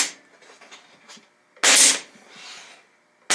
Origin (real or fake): real